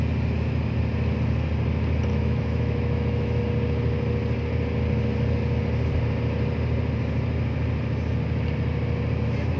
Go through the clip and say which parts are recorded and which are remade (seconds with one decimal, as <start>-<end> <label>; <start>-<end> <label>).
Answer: 0.0-2.1 recorded; 2.1-3.4 remade; 3.4-9.6 recorded